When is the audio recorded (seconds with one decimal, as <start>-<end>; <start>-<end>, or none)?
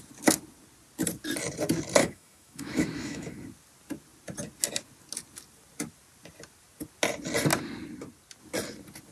0.0-2.0; 3.4-9.1